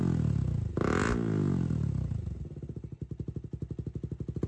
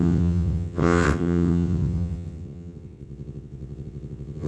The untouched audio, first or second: first